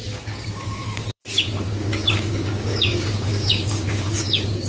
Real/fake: fake